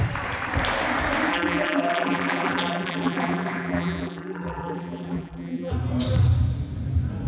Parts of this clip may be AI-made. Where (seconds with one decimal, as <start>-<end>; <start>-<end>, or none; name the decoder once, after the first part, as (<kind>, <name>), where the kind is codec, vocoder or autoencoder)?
1.3-5.7 (vocoder, BigVGAN v2)